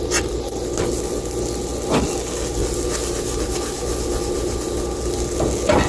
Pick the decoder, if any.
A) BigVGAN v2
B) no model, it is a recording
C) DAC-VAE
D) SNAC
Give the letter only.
B